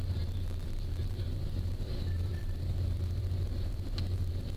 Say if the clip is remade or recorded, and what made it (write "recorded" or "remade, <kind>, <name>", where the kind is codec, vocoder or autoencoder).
remade, vocoder, BigVGAN v2